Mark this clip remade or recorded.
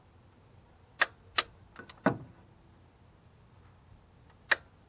recorded